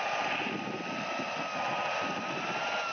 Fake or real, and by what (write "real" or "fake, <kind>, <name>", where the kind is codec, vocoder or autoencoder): real